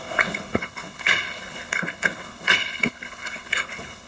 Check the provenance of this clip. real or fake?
fake